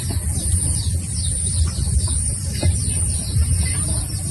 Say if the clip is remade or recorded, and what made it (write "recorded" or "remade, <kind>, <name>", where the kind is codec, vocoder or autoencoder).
remade, vocoder, BigVGAN v2